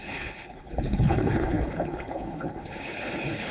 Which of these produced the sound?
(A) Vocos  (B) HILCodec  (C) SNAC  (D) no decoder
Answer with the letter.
B